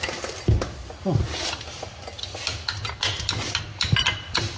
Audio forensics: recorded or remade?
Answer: recorded